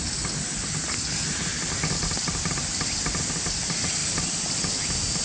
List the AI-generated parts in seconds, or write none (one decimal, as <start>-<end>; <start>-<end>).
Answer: 1.5-3.3; 4.0-4.8